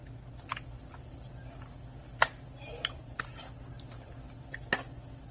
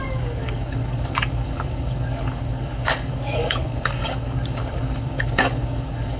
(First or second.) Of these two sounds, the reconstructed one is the second